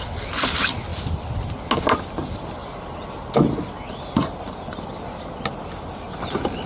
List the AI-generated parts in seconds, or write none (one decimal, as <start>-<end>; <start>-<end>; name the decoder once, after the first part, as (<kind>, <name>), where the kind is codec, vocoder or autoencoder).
none